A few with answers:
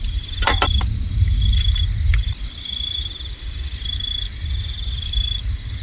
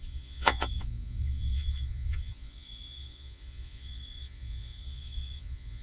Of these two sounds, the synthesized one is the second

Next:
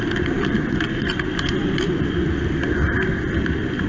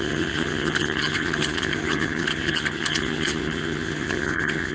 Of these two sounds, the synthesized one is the second